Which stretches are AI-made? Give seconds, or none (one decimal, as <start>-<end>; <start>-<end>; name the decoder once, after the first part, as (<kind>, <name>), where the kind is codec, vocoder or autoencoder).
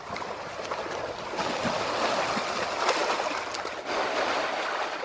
none